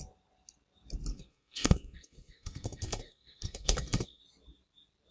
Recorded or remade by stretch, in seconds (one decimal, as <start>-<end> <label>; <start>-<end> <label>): 0.0-1.1 recorded; 1.1-4.2 remade; 4.2-5.1 recorded